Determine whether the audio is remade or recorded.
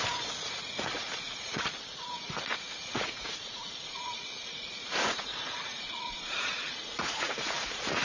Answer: remade